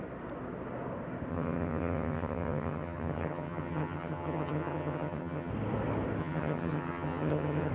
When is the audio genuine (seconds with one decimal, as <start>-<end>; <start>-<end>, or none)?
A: 0.0-1.3; 5.5-6.2